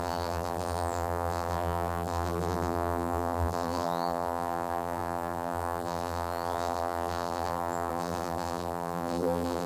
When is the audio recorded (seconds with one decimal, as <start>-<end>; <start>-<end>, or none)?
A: none